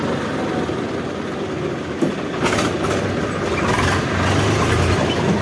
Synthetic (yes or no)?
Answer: no